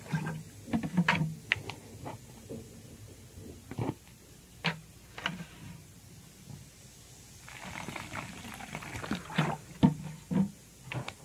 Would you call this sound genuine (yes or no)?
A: yes